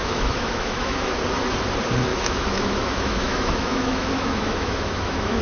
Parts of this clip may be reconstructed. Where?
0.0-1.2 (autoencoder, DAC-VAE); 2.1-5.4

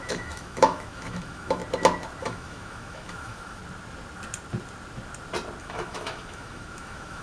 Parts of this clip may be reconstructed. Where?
0.0-1.6 (autoencoder, DAC-VAE); 2.2-3.6; 5.6-7.2